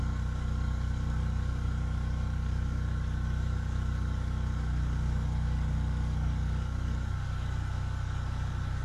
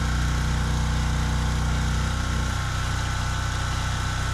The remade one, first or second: first